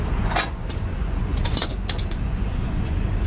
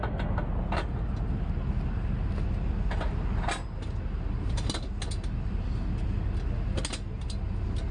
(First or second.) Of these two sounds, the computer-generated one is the first